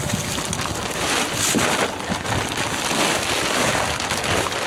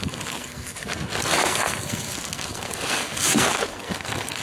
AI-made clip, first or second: second